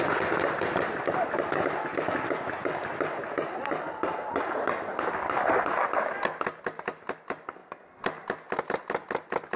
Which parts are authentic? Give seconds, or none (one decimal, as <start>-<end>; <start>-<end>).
0.0-9.6